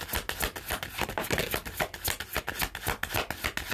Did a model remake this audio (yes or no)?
no